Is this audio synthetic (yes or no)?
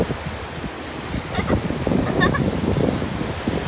no